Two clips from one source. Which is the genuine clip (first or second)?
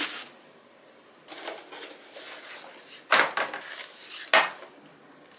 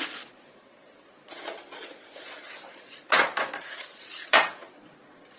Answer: first